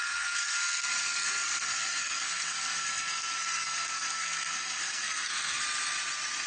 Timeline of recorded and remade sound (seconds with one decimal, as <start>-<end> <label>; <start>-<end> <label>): 0.0-5.6 remade; 5.6-6.5 recorded